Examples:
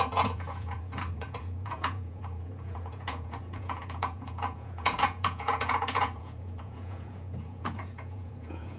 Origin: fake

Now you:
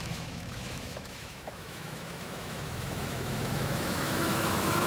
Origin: fake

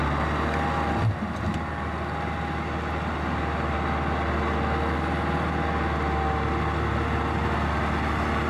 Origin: real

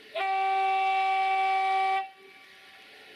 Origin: real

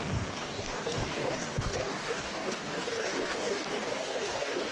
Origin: fake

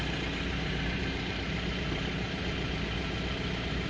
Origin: fake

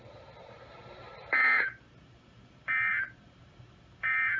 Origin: fake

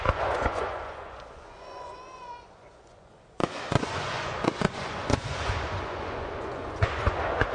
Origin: fake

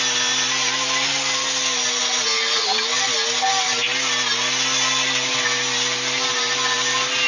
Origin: real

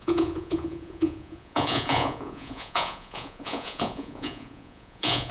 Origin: fake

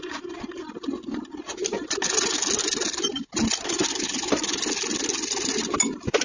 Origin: real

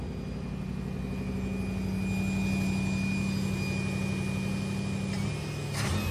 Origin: real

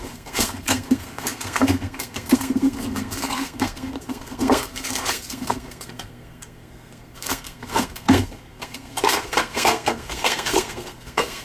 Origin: fake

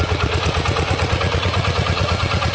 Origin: fake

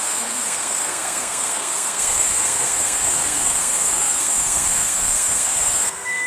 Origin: fake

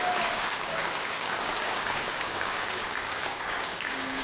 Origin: fake